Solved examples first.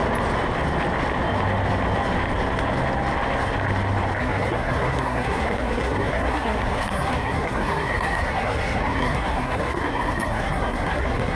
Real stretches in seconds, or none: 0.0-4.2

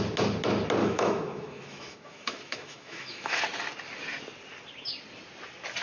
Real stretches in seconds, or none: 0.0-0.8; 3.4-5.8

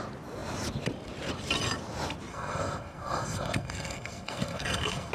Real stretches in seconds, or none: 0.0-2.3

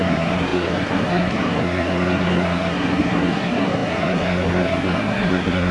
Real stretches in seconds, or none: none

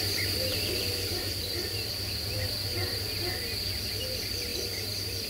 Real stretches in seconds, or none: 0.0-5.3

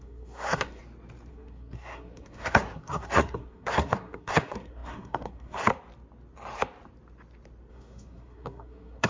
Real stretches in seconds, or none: 0.8-1.3; 5.7-7.7

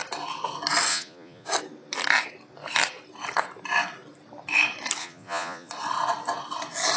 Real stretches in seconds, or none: 0.0-0.9; 1.5-5.0; 5.7-7.0

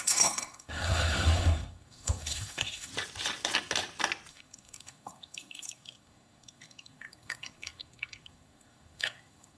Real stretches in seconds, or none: 2.9-4.3